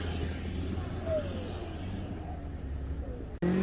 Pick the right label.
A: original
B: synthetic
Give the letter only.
A